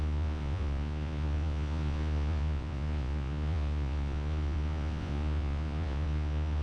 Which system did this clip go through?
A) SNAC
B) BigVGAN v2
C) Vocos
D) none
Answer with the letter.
C